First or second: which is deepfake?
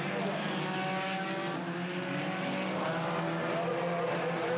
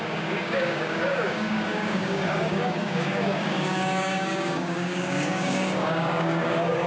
second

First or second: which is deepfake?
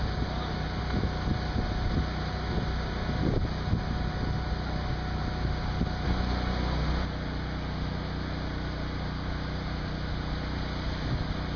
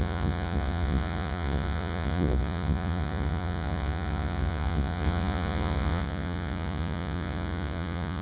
second